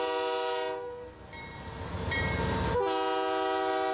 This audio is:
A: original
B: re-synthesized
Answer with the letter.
A